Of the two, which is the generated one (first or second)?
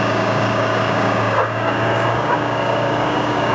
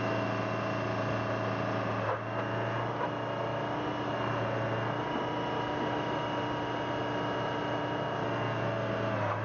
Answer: first